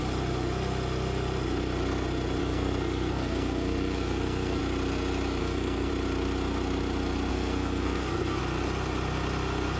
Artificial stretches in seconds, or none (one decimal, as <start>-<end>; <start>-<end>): 2.4-4.6; 5.4-5.9; 7.3-8.4

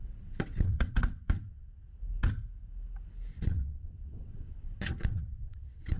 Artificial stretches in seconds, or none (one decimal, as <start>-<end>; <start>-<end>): 0.0-2.0; 3.3-6.0

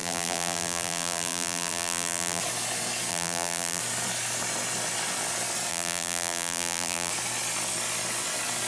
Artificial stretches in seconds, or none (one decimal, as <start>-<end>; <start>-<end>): 0.0-2.4; 3.1-3.8; 5.7-7.1

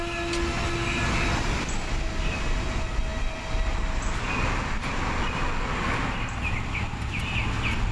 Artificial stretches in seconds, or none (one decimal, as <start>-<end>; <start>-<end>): none

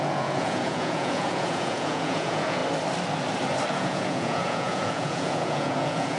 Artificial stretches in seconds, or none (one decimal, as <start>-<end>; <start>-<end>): 0.0-2.6; 3.7-6.2

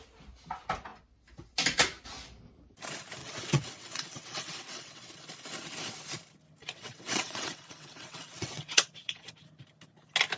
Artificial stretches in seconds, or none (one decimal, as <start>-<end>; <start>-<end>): 3.2-5.1; 6.6-9.3

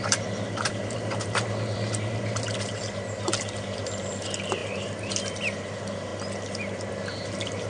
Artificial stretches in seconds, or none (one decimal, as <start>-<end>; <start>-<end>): 0.0-6.1; 6.9-7.7